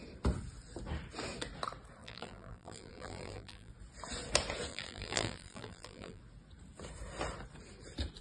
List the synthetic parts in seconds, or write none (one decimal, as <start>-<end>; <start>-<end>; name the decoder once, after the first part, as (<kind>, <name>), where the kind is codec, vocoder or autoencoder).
2.0-3.7 (vocoder, BigVGAN v2); 4.7-6.2